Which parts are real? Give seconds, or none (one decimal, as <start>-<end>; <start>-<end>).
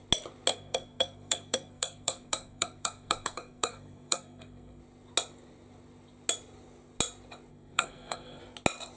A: 0.0-0.5; 4.8-7.5; 8.4-9.0